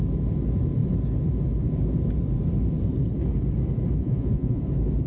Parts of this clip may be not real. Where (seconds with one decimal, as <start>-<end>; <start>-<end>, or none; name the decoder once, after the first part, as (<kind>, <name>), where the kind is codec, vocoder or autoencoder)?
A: 4.0-4.6 (vocoder, Vocos)